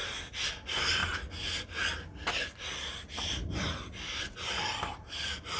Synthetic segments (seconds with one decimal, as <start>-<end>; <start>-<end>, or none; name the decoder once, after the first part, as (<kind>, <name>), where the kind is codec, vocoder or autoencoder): 0.0-1.0 (vocoder, BigVGAN v2); 2.3-5.6